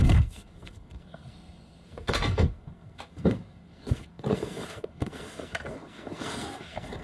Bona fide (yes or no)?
no